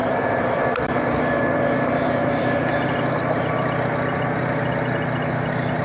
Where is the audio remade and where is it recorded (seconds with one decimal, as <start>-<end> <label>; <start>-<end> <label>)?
0.0-3.5 remade; 3.5-5.8 recorded